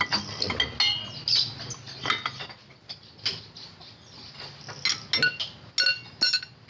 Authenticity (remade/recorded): recorded